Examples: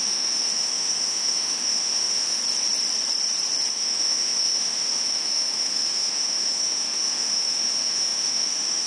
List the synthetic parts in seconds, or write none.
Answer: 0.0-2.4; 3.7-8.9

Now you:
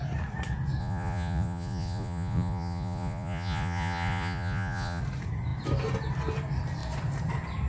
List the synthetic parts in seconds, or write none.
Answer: 0.8-5.0

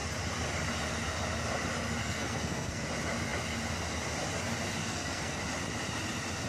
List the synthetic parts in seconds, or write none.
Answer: 2.0-2.9; 4.8-5.4

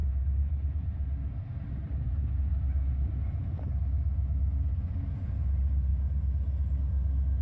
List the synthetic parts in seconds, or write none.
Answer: 0.0-2.3

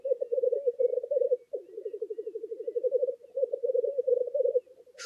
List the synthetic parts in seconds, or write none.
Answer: none

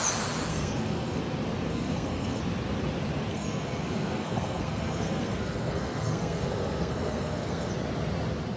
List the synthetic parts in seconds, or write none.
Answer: 0.5-1.2; 1.7-2.4; 3.3-7.7

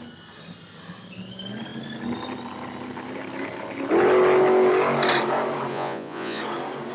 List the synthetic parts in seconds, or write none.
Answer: 5.7-6.4

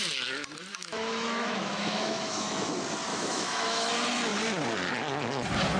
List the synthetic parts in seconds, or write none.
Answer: 0.7-2.7; 3.1-3.9